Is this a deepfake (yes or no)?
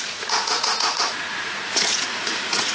yes